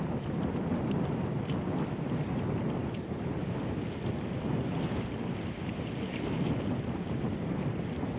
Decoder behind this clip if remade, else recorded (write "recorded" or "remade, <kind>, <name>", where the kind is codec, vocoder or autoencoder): recorded